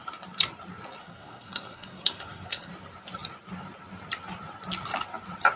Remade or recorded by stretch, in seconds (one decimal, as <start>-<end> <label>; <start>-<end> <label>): 0.0-1.0 recorded; 1.0-2.7 remade; 2.7-5.6 recorded